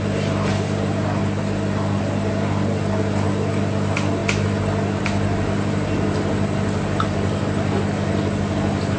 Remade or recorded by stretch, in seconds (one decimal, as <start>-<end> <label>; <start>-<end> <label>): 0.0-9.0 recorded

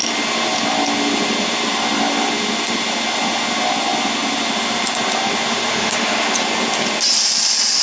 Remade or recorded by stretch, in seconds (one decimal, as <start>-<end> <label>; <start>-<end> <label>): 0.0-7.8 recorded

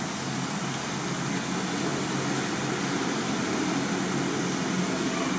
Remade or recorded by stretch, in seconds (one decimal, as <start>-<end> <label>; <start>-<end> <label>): 0.0-5.4 recorded

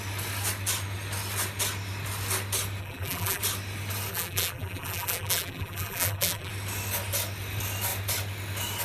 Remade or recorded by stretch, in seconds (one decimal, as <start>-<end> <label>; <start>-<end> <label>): 0.0-2.8 recorded; 2.8-3.4 remade; 3.4-4.1 recorded; 4.1-6.5 remade; 6.5-8.8 recorded

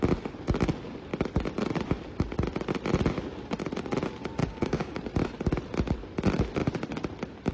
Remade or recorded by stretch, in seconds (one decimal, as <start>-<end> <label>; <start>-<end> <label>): 0.0-4.4 recorded; 4.4-5.0 remade; 5.0-7.5 recorded

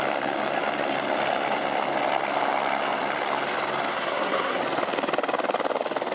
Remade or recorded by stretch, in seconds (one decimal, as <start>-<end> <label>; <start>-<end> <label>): 0.0-3.9 recorded; 3.9-4.6 remade; 4.6-6.1 recorded

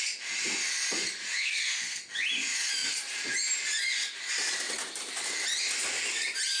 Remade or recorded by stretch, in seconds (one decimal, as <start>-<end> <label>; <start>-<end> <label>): 0.0-1.4 recorded; 1.4-2.0 remade; 2.0-6.6 recorded